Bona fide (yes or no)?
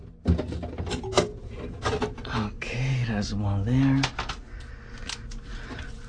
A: yes